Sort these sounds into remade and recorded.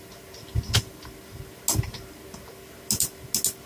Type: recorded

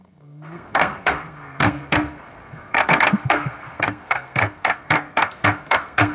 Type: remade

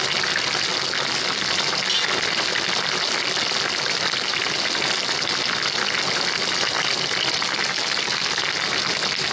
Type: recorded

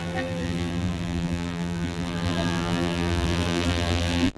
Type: remade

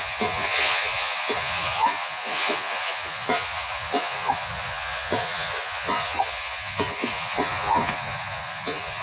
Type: remade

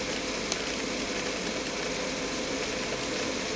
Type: recorded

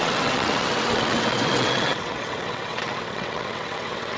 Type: remade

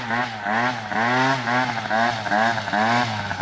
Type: recorded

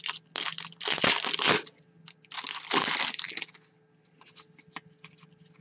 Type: recorded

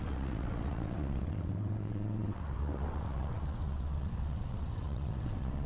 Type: remade